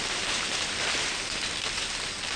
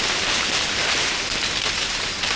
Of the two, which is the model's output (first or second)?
second